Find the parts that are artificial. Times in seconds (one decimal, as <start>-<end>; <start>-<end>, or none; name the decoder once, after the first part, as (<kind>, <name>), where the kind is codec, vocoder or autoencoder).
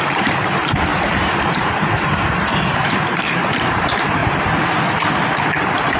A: 0.0-0.9 (vocoder, BigVGAN v2); 3.3-4.2; 5.6-6.0